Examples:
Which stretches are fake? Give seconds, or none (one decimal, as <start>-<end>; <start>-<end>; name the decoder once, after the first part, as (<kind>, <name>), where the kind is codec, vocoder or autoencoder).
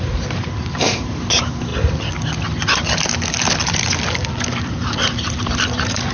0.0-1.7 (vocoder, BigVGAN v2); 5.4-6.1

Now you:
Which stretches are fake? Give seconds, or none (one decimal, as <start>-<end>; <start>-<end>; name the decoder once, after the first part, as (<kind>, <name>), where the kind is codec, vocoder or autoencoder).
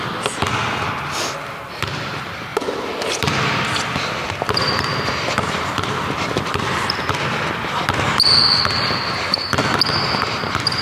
2.5-7.1 (vocoder, BigVGAN v2)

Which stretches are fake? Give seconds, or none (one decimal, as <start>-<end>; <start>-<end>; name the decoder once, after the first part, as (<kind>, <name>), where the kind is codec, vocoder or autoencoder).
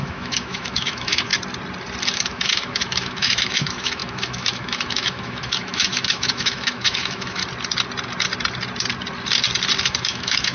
0.0-1.3 (autoencoder, DAC-VAE); 2.0-7.4; 9.8-10.5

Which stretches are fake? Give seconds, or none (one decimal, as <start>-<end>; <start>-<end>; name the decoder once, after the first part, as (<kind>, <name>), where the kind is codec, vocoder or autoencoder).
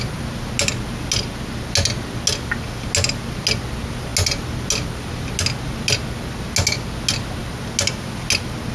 none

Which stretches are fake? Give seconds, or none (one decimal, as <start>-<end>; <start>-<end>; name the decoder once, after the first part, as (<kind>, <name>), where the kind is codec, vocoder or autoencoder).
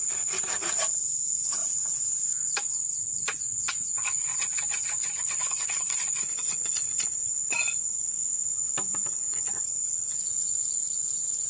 0.0-1.6 (vocoder, Vocos); 2.8-4.3; 5.1-8.2; 9.1-11.5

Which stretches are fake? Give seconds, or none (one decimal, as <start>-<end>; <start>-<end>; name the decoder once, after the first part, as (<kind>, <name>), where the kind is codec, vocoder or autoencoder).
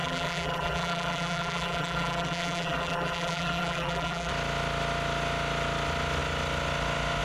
0.0-4.3 (vocoder, BigVGAN v2)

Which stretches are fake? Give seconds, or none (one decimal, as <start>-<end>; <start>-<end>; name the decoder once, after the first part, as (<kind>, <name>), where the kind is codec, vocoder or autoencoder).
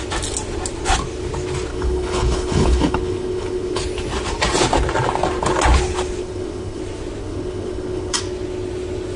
1.7-3.8 (codec, HILCodec); 6.2-6.8; 7.2-8.2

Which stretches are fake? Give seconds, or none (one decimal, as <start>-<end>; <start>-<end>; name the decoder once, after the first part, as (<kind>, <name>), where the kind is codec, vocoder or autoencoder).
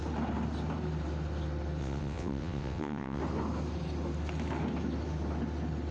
1.8-3.2 (vocoder, WaveNeXt)